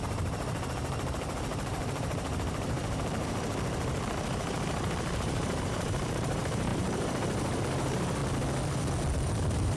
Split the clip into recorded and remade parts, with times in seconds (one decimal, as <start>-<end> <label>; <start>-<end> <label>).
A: 0.0-8.2 remade; 8.2-9.1 recorded; 9.1-9.8 remade